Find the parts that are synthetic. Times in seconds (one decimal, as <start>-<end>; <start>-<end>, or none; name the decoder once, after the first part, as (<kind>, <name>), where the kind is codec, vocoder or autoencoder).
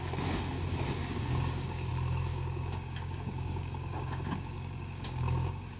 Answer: 1.0-1.9 (codec, DAC); 2.3-5.8